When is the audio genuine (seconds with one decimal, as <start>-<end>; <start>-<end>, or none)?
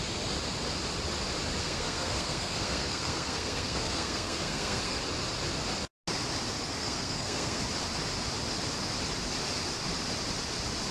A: 0.0-1.6; 5.0-6.8; 7.6-10.9